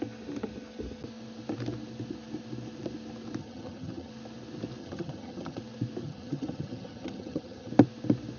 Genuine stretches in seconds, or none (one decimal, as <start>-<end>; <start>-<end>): 0.0-3.4; 4.1-4.8; 5.6-6.0; 7.7-8.4